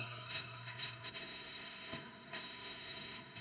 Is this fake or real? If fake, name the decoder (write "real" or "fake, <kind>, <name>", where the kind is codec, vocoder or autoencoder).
fake, codec, SNAC